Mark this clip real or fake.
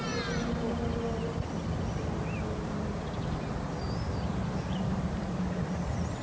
real